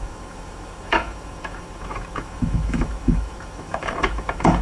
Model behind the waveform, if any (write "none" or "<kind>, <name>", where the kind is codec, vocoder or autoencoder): autoencoder, DAC-VAE